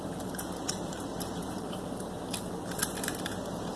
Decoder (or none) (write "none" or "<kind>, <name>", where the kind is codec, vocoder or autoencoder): vocoder, BigVGAN v2